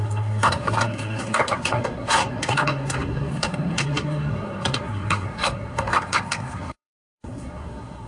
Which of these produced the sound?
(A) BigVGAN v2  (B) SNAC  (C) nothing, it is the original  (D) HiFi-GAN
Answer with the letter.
B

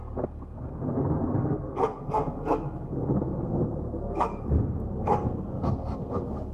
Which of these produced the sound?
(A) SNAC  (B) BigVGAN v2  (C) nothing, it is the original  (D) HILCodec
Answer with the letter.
A